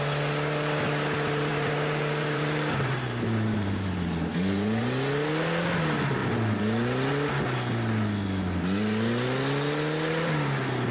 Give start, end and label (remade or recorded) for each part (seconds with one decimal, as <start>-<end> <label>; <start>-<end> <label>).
0.0-1.5 recorded; 1.5-4.8 remade; 4.8-10.9 recorded